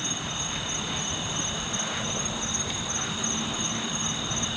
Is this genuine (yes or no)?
yes